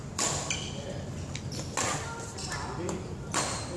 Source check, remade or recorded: recorded